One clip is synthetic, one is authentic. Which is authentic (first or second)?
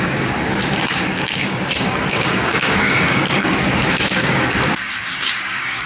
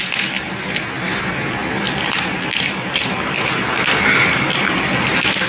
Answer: second